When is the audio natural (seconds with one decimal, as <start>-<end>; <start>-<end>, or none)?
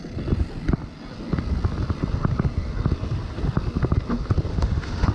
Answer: 0.0-4.5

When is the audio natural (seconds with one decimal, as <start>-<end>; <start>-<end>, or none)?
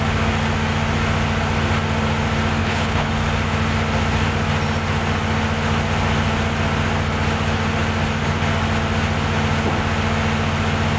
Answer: 0.0-2.6; 3.1-11.0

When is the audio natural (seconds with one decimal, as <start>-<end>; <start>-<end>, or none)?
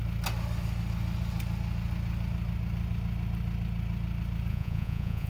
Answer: 0.0-4.5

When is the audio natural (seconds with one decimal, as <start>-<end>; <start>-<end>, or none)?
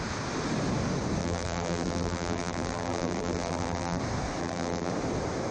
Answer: 0.0-1.2; 4.0-4.4; 4.9-5.5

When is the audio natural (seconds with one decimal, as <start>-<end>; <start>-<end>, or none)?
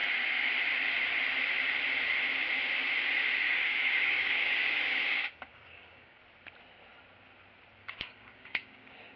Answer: 0.0-3.4; 6.2-7.8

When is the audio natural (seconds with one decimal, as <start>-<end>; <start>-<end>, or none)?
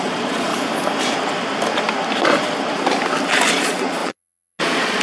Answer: 0.5-3.5